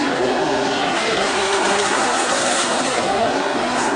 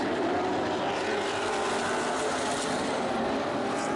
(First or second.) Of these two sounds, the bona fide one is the second